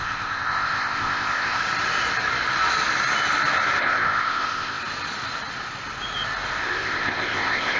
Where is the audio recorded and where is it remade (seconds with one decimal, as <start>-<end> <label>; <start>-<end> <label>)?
0.0-1.6 remade; 1.6-3.8 recorded; 3.8-4.8 remade; 4.8-6.6 recorded; 6.6-7.8 remade